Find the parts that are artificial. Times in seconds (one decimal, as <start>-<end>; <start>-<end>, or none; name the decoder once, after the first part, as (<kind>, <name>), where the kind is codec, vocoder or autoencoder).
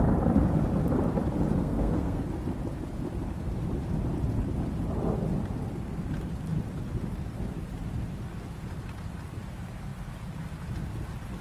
1.6-2.2 (codec, SNAC)